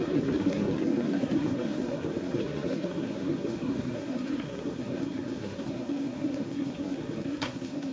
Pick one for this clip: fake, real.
fake